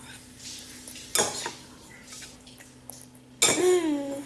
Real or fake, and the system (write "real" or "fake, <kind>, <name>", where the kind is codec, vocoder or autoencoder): real